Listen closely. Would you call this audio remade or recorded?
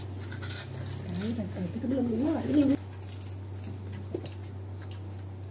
recorded